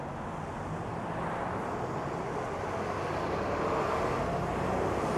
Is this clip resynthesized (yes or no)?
no